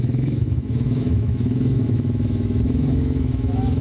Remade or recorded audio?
remade